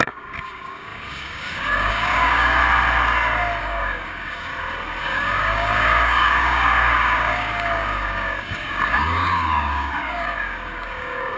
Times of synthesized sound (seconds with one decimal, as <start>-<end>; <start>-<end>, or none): 0.0-2.6; 3.6-4.5; 5.0-11.4